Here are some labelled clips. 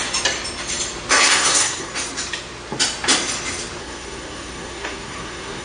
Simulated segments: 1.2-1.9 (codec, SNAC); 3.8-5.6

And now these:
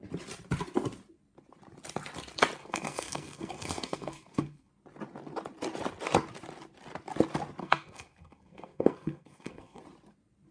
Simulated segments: 2.6-4.7 (codec, SNAC); 7.6-9.8